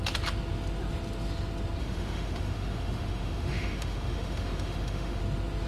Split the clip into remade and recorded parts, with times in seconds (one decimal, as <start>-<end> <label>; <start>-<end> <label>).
0.0-1.8 recorded; 1.8-5.2 remade; 5.2-5.7 recorded